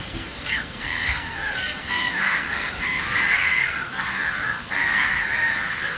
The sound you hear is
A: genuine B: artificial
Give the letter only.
B